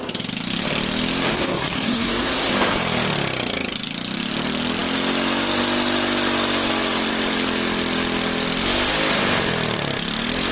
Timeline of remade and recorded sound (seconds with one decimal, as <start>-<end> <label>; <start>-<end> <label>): 0.0-1.3 recorded; 1.3-2.5 remade; 2.5-10.5 recorded